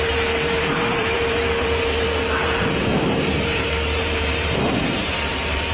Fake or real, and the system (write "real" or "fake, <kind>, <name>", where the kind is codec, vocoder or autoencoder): fake, vocoder, BigVGAN v2